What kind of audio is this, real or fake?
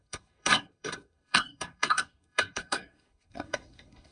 fake